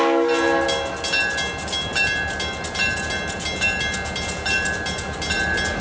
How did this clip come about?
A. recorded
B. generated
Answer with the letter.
A